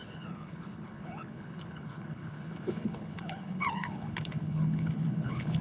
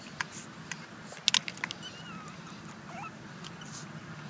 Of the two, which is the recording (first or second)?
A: second